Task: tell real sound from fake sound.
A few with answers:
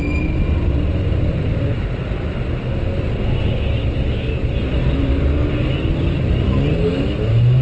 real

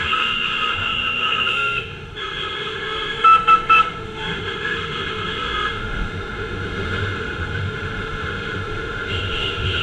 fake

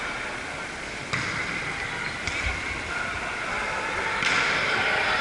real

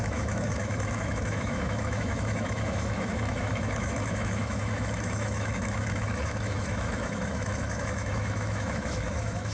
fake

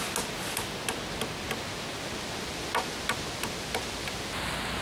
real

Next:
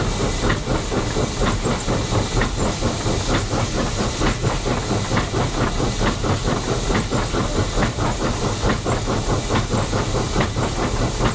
real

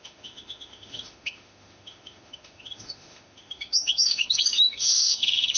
fake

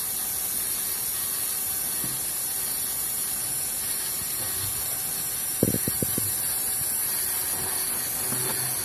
real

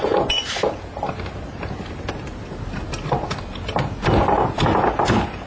real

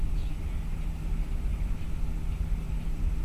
real